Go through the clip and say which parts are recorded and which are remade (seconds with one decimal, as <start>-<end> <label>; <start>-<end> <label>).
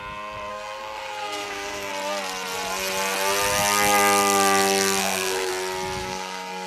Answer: 0.0-0.5 recorded; 0.5-1.9 remade; 1.9-5.0 recorded; 5.0-5.5 remade; 5.5-6.0 recorded; 6.0-6.7 remade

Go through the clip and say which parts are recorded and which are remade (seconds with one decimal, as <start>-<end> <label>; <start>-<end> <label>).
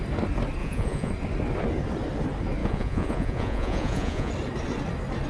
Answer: 0.0-0.6 recorded; 0.6-1.1 remade; 1.1-2.6 recorded; 2.6-4.3 remade; 4.3-5.3 recorded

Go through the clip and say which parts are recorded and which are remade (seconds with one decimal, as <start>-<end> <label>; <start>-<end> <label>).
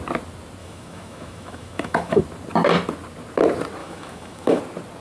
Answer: 0.0-0.6 recorded; 0.6-2.2 remade; 2.2-3.8 recorded; 3.8-4.6 remade; 4.6-5.0 recorded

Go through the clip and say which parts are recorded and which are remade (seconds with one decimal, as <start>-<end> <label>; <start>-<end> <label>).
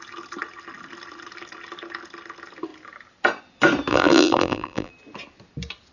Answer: 0.0-3.9 recorded; 3.9-4.9 remade; 4.9-5.9 recorded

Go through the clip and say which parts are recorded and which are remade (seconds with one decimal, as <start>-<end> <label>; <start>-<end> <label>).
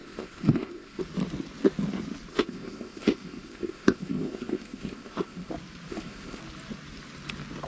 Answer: 0.0-1.0 remade; 1.0-2.3 recorded; 2.3-5.5 remade; 5.5-5.9 recorded; 5.9-6.4 remade; 6.4-7.7 recorded